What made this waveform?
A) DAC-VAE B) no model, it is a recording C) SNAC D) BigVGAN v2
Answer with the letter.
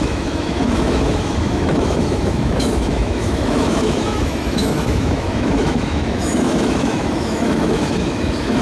A